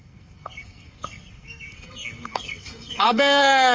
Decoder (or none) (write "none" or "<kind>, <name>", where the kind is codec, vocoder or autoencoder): codec, SNAC